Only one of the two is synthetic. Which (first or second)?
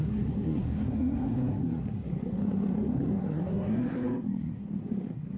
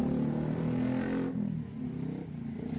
first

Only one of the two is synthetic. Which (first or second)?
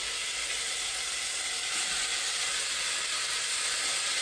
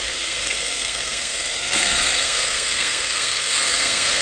second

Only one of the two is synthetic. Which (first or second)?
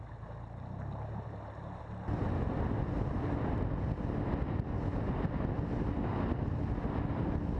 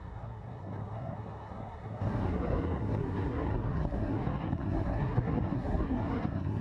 second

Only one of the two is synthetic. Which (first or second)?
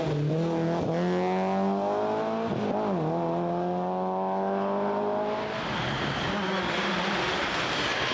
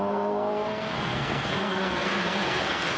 second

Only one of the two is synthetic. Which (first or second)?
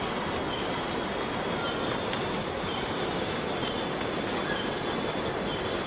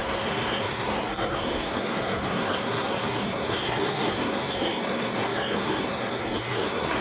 second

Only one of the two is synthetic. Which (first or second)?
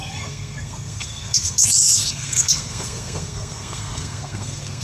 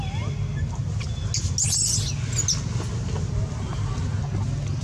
first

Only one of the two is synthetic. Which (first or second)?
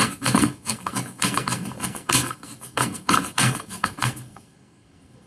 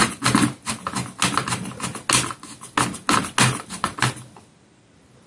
first